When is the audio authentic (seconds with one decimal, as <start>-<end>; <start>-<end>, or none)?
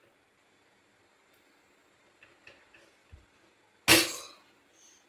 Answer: 0.0-5.1